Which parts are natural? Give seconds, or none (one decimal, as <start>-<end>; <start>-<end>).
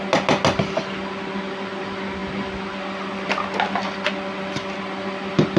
0.0-5.6